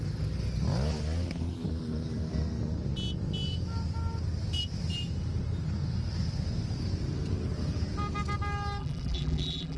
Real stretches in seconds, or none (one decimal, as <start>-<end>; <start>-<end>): 0.0-8.8